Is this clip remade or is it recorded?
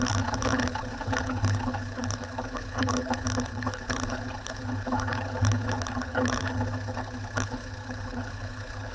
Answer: remade